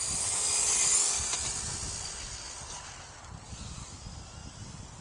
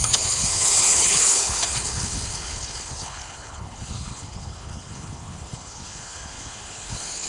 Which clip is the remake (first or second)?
second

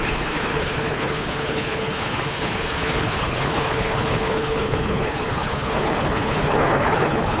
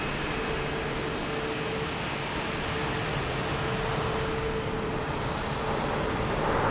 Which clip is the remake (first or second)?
first